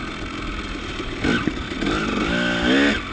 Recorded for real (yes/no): yes